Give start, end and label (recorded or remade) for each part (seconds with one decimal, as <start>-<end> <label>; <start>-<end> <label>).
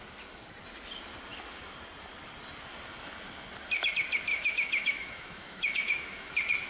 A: 0.0-4.3 recorded; 4.3-6.3 remade; 6.3-6.7 recorded